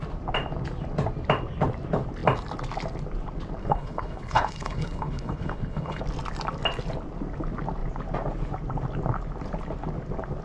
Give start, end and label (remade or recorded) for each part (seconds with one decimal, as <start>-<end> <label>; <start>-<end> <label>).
0.0-3.6 recorded; 3.6-6.0 remade; 6.0-10.4 recorded